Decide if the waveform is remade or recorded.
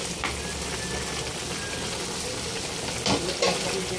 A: recorded